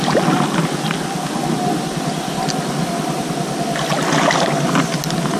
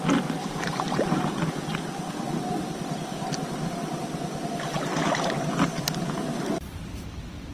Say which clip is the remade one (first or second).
second